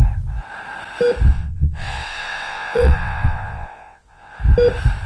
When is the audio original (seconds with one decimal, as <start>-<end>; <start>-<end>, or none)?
0.0-1.3; 4.4-5.1